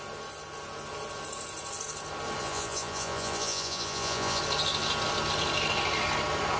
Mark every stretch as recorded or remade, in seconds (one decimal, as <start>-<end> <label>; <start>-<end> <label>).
0.0-2.4 recorded; 2.4-4.4 remade; 4.4-6.6 recorded